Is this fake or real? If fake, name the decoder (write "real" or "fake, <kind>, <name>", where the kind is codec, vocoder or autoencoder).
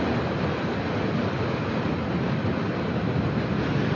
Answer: real